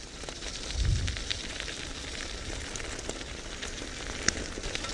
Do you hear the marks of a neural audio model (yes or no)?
no